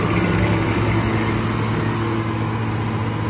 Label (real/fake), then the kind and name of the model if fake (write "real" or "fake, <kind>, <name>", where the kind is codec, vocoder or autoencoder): real